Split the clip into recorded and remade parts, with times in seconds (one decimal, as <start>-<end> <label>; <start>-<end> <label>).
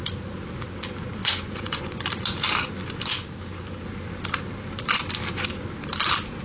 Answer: 0.0-1.2 recorded; 1.2-2.0 remade; 2.0-6.4 recorded